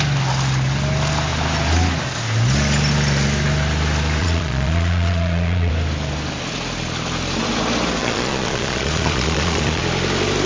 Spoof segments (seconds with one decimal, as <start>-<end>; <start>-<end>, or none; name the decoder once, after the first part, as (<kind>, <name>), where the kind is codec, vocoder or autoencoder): 4.2-5.7 (vocoder, Vocos); 8.0-9.8